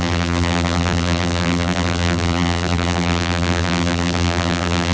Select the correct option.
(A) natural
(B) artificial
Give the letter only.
B